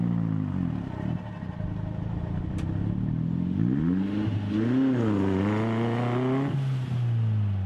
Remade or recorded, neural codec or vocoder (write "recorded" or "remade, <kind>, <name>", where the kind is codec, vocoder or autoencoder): recorded